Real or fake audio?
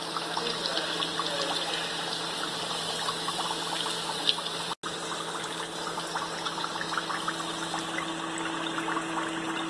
real